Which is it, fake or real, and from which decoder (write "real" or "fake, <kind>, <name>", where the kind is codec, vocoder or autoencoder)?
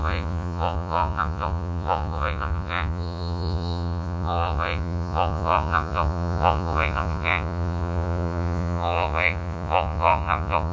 fake, vocoder, Vocos